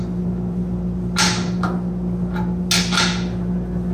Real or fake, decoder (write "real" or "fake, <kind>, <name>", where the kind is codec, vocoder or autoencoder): real